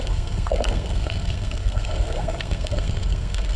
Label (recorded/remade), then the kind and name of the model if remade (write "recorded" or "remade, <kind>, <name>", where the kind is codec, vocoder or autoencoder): remade, codec, SNAC